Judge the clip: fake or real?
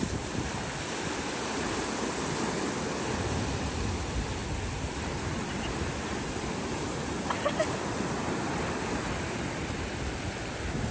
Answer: fake